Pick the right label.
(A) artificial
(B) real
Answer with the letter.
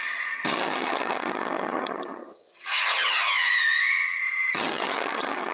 A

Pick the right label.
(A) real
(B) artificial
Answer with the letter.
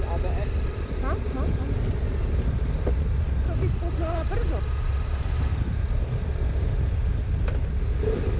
A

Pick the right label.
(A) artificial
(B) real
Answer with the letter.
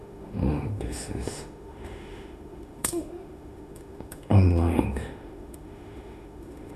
A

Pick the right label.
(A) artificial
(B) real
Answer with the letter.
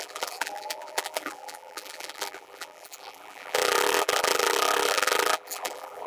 A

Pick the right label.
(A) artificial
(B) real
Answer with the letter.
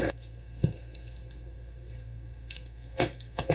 A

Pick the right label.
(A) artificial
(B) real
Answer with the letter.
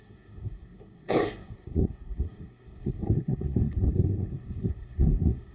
A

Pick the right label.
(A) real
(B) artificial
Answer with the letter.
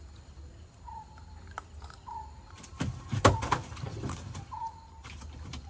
A